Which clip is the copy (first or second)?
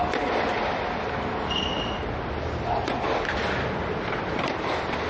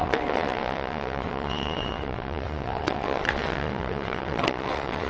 second